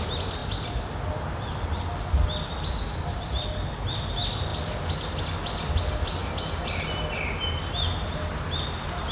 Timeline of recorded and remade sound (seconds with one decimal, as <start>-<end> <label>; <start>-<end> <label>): 0.0-9.1 recorded